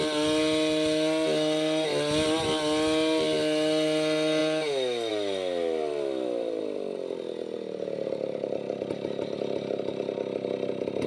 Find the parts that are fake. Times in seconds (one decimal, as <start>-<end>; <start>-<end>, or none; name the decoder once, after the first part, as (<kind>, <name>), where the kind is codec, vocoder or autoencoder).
none